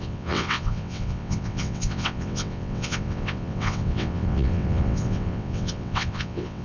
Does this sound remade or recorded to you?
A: remade